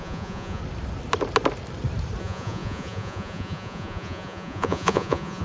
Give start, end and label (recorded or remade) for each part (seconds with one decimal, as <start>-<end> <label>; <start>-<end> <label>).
0.0-0.6 remade; 0.6-2.2 recorded; 2.2-5.4 remade